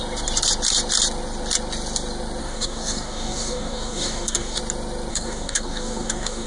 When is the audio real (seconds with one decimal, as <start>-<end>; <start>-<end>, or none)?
0.0-2.4; 4.6-5.1